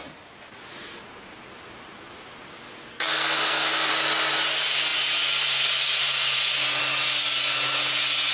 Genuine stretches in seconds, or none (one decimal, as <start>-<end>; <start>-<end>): 0.0-2.9; 3.9-8.3